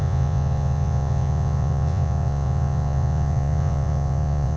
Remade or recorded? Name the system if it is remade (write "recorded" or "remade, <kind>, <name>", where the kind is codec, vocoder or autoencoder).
remade, vocoder, Vocos